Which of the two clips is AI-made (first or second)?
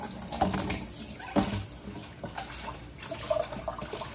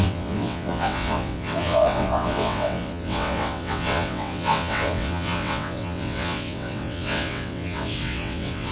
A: second